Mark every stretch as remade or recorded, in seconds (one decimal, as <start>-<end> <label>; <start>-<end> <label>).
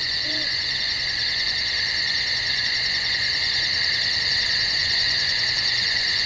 0.0-3.7 remade; 3.7-4.2 recorded; 4.2-6.3 remade